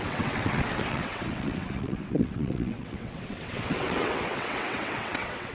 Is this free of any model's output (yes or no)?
no